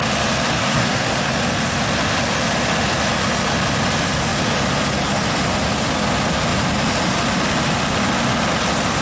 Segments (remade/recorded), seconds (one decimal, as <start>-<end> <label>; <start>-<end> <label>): 0.0-0.6 recorded; 0.6-1.3 remade; 1.3-9.0 recorded